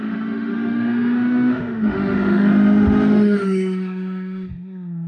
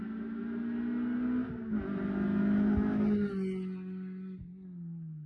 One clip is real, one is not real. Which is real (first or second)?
second